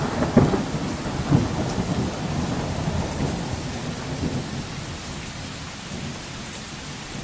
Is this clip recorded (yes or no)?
yes